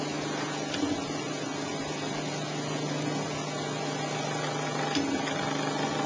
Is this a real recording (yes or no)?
yes